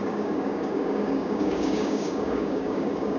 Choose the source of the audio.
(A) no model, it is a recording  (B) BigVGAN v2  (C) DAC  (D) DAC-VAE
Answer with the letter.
C